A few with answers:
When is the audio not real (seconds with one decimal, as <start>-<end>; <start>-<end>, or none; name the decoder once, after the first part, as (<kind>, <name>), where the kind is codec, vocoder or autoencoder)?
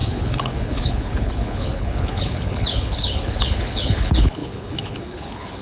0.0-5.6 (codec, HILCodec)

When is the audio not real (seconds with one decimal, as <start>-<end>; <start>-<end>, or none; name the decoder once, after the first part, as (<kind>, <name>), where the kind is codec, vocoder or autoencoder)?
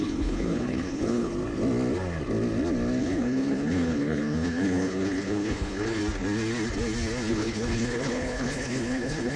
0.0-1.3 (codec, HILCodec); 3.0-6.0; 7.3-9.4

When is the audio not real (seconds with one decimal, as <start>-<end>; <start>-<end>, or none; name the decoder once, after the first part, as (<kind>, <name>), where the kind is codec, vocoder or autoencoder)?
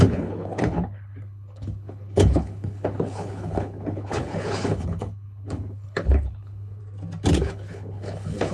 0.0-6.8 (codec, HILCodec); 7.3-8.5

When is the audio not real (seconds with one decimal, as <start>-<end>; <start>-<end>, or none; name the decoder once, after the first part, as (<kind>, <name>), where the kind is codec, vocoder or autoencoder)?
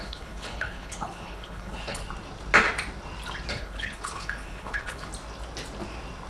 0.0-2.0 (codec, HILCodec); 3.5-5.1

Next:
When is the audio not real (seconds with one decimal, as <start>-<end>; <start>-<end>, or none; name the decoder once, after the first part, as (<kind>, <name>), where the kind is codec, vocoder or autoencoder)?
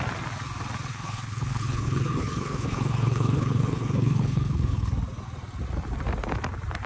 0.9-4.9 (codec, HILCodec)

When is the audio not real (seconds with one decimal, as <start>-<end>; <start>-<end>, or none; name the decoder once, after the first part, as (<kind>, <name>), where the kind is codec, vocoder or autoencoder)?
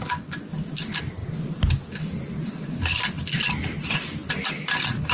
none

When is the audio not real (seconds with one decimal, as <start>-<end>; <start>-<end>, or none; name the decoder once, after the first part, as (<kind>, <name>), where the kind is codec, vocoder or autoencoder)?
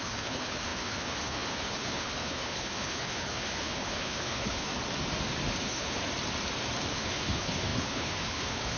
0.0-4.7 (codec, HILCodec); 5.6-6.0; 6.9-8.8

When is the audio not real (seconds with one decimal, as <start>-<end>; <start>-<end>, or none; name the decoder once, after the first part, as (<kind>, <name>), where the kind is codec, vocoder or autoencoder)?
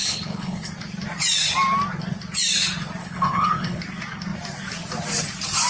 0.0-0.7 (codec, HILCodec); 3.0-3.8